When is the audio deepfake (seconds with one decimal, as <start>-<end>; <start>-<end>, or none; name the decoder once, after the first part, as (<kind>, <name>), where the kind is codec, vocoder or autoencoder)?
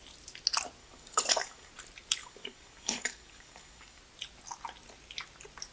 0.8-1.7 (codec, DAC); 2.2-4.0